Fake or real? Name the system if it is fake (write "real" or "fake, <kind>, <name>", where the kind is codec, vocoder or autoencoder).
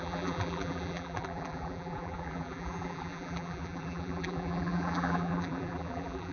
fake, vocoder, BigVGAN v2